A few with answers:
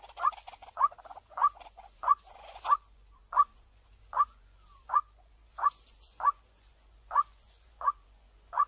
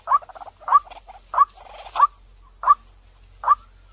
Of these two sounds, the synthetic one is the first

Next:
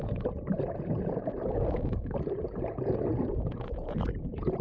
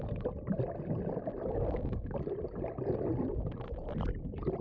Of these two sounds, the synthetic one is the first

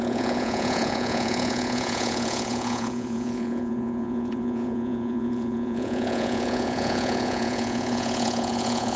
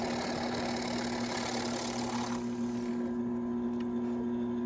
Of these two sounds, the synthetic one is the first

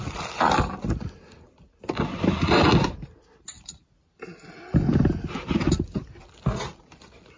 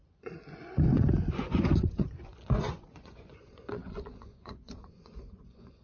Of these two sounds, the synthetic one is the second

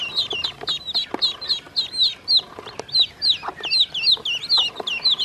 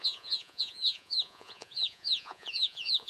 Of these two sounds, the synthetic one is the second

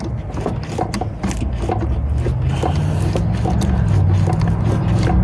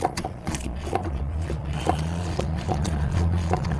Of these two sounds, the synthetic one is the second